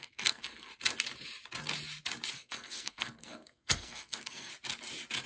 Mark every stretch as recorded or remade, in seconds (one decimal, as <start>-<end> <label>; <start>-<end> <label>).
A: 0.0-0.7 remade; 0.7-2.3 recorded; 2.3-4.5 remade; 4.5-5.3 recorded